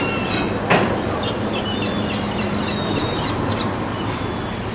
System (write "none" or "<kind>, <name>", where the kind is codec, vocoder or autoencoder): none